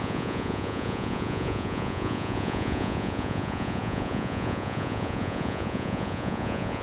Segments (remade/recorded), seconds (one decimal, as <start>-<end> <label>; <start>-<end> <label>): 0.0-6.8 remade